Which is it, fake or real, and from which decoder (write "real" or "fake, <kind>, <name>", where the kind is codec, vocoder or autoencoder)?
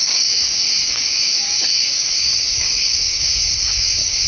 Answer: fake, codec, DAC